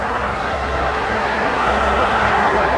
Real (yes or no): no